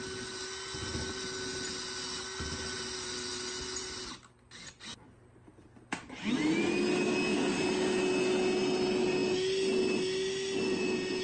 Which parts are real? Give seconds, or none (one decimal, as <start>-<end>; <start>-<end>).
0.0-11.2